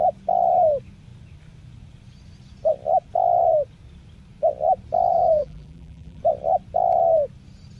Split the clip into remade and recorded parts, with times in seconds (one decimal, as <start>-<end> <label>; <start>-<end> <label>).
0.0-5.1 recorded; 5.1-6.2 remade; 6.2-7.8 recorded